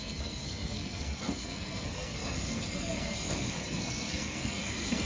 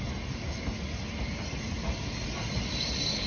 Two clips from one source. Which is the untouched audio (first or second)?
second